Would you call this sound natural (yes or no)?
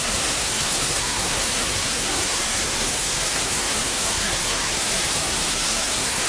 no